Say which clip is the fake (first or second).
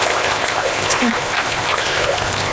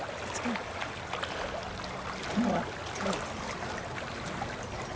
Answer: first